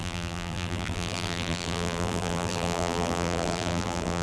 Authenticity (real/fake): fake